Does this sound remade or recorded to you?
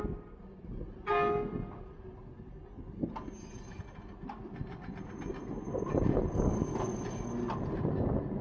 recorded